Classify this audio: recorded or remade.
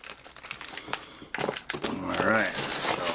recorded